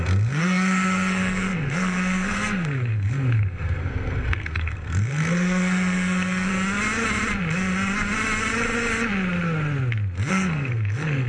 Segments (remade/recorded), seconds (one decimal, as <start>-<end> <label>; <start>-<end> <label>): 0.0-6.5 remade; 6.5-10.3 recorded; 10.3-11.3 remade